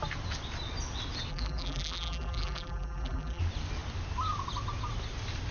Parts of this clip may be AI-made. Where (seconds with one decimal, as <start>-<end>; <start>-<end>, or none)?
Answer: 1.3-3.4

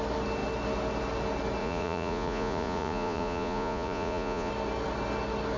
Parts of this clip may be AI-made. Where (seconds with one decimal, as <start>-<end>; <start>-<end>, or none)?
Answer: 1.6-4.5

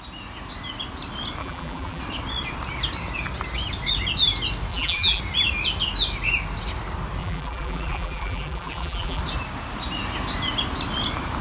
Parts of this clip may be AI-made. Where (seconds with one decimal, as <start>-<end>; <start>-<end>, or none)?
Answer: 1.4-2.0; 4.7-5.2; 7.2-9.2

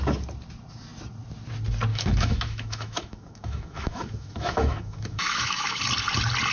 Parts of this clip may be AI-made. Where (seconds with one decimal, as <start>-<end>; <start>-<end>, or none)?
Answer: 1.9-5.8

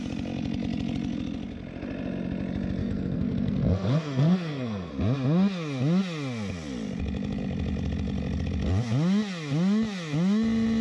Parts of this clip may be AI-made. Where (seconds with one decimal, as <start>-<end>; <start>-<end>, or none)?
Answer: 2.8-4.9

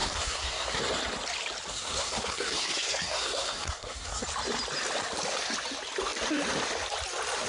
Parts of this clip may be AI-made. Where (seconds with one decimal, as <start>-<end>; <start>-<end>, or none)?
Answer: 0.0-0.8; 1.7-4.2

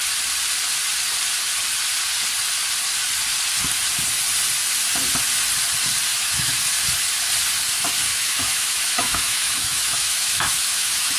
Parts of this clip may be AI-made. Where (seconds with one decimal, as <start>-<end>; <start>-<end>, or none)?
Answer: 6.1-6.6; 8.1-11.2